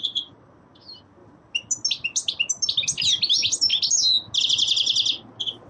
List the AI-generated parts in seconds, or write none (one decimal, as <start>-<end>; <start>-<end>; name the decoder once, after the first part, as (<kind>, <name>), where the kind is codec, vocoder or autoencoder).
none